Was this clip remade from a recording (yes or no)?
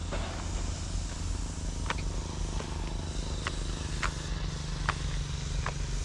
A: no